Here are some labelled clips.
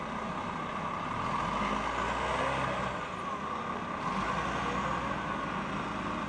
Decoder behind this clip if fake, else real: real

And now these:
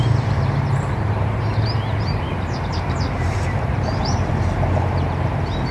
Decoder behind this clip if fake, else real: fake, vocoder, BigVGAN v2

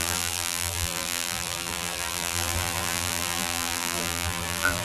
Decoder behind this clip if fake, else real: fake, vocoder, BigVGAN v2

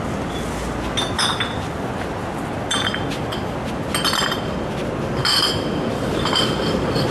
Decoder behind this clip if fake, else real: real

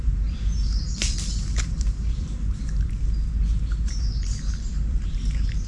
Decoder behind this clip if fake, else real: fake, vocoder, BigVGAN v2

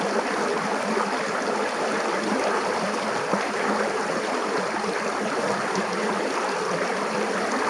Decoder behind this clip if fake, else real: fake, vocoder, BigVGAN v2